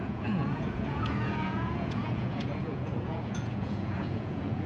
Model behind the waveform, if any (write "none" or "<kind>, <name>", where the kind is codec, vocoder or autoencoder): vocoder, Vocos